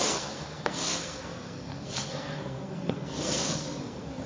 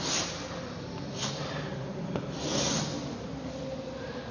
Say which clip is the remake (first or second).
first